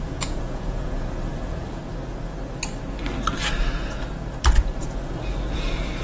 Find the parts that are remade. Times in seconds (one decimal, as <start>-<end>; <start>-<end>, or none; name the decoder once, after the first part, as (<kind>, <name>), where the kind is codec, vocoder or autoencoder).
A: 0.0-1.8 (vocoder, Vocos); 4.8-6.0